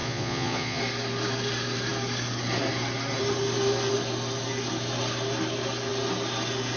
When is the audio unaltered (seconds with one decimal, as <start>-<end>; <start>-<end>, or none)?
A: 0.8-6.8